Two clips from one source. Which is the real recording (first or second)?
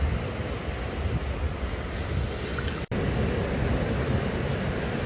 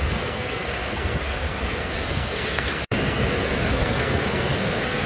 first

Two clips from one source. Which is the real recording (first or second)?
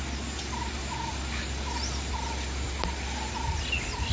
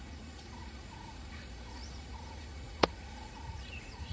first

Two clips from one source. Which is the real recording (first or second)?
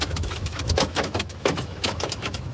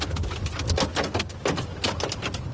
second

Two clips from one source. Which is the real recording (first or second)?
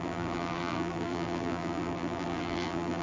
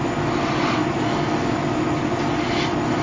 second